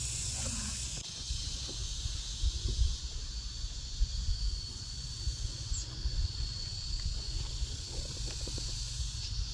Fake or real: fake